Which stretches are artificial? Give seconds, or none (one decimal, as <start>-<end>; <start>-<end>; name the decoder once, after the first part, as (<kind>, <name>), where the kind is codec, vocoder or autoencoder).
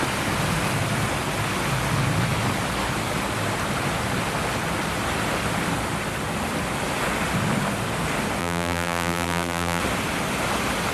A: 8.4-9.8 (vocoder, BigVGAN v2)